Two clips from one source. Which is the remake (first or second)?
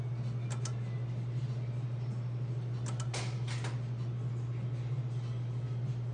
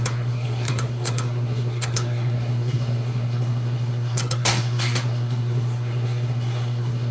second